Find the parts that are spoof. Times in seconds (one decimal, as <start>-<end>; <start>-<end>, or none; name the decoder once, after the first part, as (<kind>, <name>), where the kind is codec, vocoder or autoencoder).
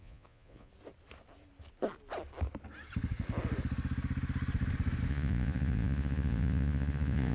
0.0-0.7 (vocoder, Vocos); 5.1-7.3